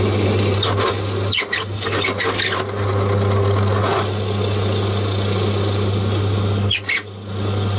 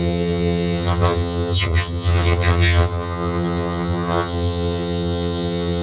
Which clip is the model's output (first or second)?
second